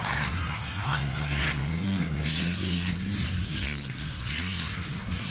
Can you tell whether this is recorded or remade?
remade